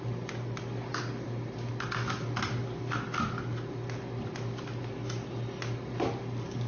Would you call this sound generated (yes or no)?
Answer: no